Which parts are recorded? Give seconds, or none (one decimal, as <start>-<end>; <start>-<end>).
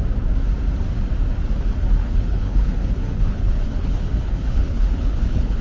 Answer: 0.0-2.0